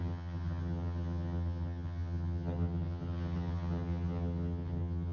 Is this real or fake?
fake